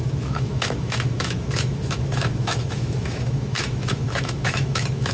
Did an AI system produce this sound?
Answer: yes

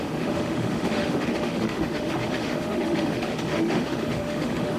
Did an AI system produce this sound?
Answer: yes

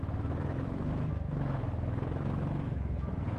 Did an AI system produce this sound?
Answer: yes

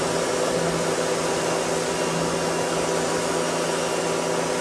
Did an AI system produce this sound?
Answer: no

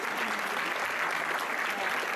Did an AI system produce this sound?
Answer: no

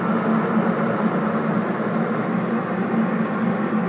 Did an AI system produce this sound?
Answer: no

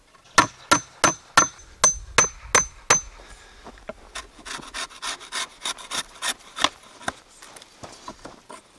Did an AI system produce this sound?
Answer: no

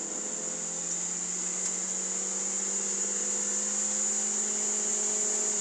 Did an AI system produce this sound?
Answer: no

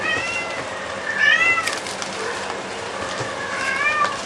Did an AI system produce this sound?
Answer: no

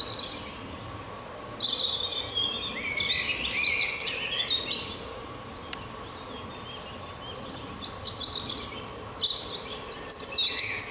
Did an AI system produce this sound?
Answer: no